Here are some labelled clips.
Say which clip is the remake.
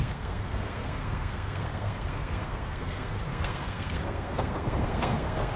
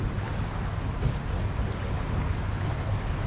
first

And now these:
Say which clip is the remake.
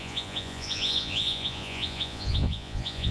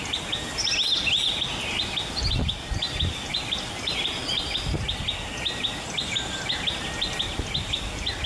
first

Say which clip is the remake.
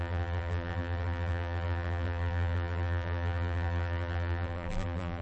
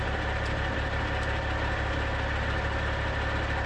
first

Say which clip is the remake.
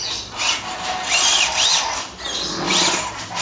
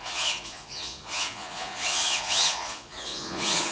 second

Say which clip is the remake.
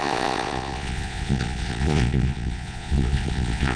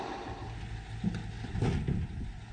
first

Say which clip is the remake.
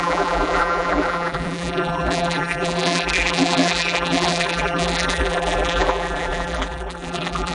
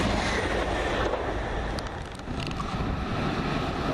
first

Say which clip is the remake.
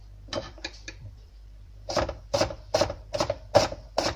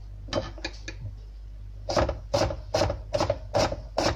first